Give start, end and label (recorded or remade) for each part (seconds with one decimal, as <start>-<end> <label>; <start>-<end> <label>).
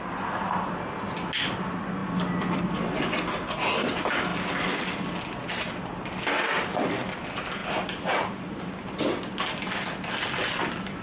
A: 0.0-11.0 recorded